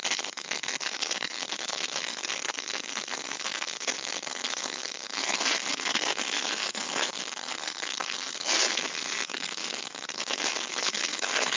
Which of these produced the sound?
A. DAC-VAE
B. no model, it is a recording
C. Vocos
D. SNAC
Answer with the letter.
D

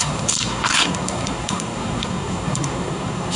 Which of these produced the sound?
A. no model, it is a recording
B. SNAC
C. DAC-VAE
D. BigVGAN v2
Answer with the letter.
B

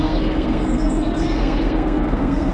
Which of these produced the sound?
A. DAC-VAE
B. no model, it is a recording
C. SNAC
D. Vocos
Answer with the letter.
C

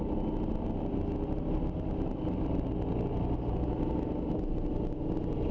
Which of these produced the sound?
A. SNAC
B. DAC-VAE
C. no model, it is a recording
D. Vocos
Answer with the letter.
C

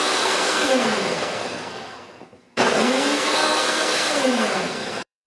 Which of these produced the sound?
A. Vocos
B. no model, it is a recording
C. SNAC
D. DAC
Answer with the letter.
C